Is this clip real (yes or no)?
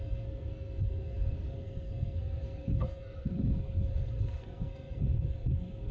no